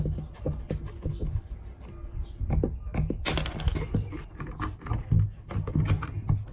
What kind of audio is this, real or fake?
real